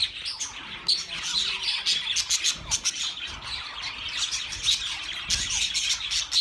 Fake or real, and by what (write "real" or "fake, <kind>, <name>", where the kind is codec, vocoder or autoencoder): real